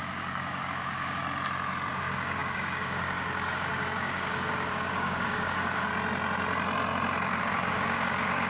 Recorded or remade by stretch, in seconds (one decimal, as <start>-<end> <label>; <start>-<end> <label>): 0.0-1.2 remade; 1.2-1.9 recorded; 1.9-5.9 remade; 5.9-7.4 recorded; 7.4-8.5 remade